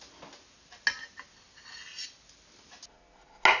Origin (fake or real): real